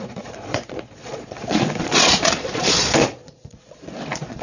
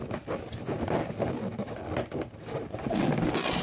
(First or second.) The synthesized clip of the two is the first